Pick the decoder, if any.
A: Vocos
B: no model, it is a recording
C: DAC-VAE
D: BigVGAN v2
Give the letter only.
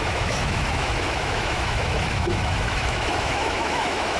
C